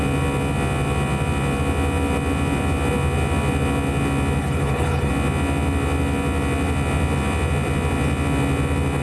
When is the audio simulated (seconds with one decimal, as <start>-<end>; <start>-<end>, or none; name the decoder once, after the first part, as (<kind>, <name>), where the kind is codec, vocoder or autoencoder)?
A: 4.4-5.1 (codec, HILCodec)